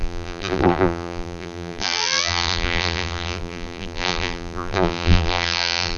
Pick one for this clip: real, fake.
fake